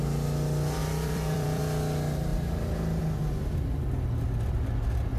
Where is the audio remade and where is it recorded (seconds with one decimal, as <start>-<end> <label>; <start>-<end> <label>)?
0.0-0.8 recorded; 0.8-1.6 remade; 1.6-2.3 recorded; 2.3-3.0 remade; 3.0-5.2 recorded